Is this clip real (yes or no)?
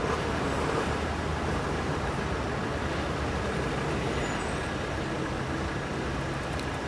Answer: yes